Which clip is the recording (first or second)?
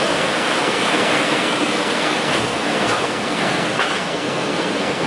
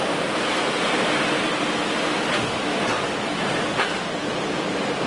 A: second